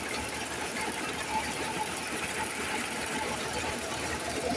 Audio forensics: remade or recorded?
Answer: remade